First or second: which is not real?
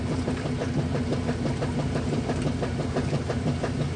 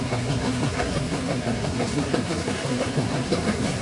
second